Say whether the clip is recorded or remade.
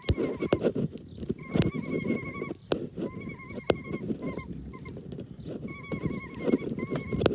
recorded